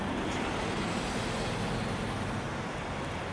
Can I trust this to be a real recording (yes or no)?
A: yes